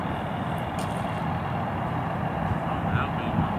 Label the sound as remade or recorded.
recorded